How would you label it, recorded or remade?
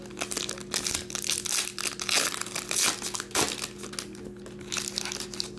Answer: recorded